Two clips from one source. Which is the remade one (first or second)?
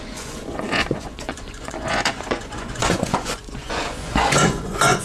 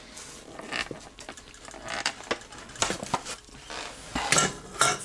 first